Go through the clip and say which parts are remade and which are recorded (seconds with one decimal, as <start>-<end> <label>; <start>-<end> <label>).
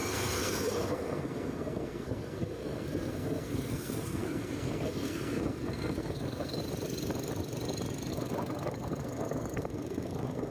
0.0-6.6 remade; 6.6-8.1 recorded; 8.1-10.5 remade